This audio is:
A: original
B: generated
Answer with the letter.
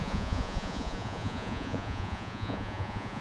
B